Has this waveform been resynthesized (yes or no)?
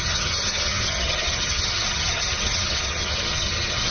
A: yes